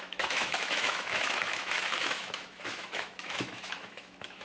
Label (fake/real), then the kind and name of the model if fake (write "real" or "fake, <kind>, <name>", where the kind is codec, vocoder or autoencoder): fake, autoencoder, DAC-VAE